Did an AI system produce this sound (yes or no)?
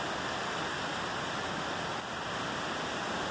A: no